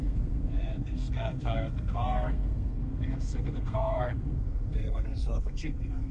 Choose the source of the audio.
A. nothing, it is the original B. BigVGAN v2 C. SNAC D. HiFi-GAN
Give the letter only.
C